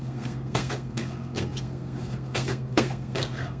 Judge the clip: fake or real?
fake